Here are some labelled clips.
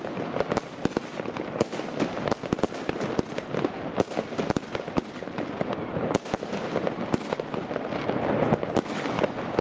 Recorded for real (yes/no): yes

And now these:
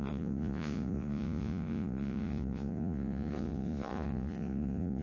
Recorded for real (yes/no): no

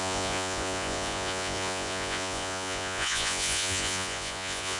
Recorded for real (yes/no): no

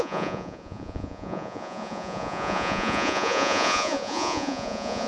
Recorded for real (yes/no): no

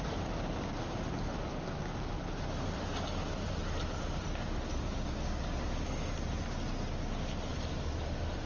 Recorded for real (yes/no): yes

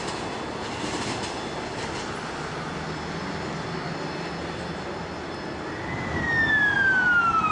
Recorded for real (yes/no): yes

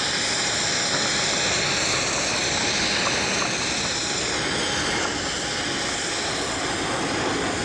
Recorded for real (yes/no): yes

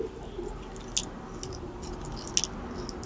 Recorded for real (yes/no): yes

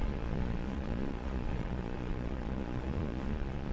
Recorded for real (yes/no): no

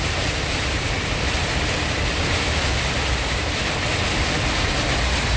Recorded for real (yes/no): yes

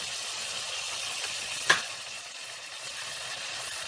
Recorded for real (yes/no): no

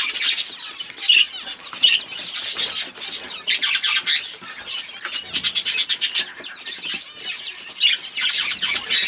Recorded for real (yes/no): yes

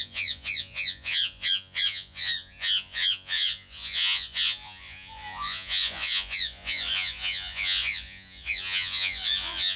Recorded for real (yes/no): no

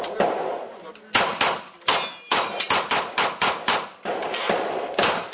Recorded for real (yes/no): yes